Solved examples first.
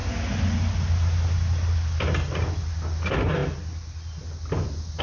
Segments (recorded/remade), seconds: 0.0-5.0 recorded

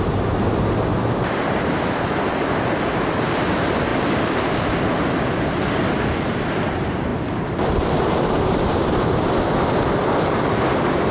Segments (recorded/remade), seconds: 0.0-0.9 recorded; 0.9-2.7 remade; 2.7-11.1 recorded

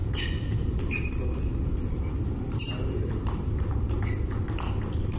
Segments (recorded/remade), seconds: 0.0-3.1 remade; 3.1-5.2 recorded

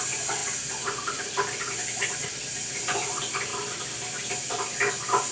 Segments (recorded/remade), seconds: 0.0-3.5 recorded; 3.5-5.3 remade

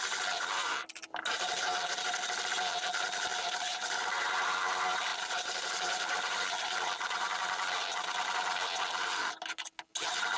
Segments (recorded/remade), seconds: 0.0-3.3 recorded; 3.3-4.1 remade; 4.1-5.1 recorded; 5.1-6.0 remade; 6.0-10.4 recorded

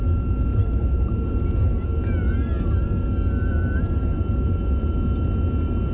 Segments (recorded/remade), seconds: 0.0-0.5 recorded; 0.5-1.3 remade; 1.3-5.9 recorded

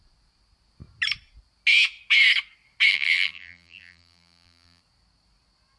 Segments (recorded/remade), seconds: 0.0-2.9 recorded; 2.9-4.8 remade; 4.8-5.8 recorded

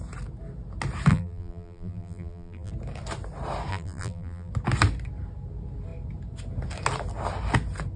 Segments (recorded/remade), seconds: 0.0-1.1 recorded; 1.1-2.7 remade; 2.7-3.7 recorded; 3.7-4.5 remade; 4.5-8.0 recorded